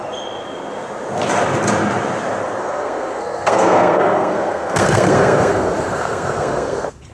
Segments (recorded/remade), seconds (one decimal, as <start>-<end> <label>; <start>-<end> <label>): 0.0-2.6 recorded; 2.6-7.1 remade